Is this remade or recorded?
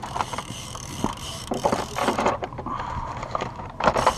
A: remade